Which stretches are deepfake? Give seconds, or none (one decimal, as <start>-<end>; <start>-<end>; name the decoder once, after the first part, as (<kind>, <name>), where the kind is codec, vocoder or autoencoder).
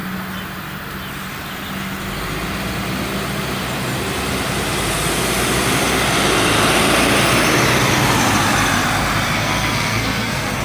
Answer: 9.4-10.6 (codec, SNAC)